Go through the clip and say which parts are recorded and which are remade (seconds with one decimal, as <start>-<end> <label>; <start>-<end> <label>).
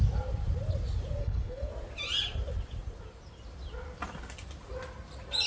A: 0.0-1.2 recorded; 1.2-1.7 remade; 1.7-5.5 recorded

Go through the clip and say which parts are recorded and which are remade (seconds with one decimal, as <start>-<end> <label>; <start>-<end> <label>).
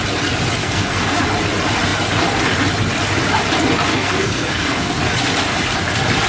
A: 0.0-0.6 recorded; 0.6-1.2 remade; 1.2-3.9 recorded; 3.9-5.0 remade; 5.0-6.3 recorded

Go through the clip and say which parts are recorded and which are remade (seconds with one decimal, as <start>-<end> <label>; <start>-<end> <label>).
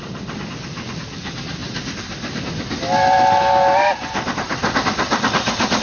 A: 0.0-5.8 recorded